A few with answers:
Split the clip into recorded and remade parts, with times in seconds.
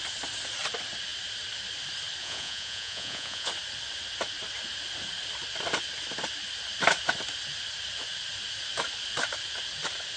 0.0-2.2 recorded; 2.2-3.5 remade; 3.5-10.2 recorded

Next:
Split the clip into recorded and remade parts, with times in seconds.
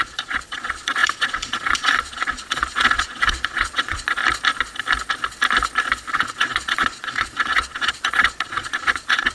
0.0-4.2 remade; 4.2-6.1 recorded; 6.1-9.3 remade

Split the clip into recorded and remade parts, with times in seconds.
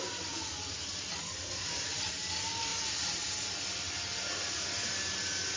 0.0-5.6 recorded